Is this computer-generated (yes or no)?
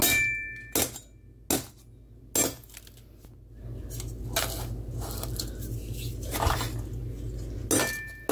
no